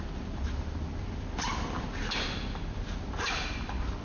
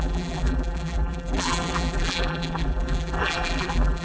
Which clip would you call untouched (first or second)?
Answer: first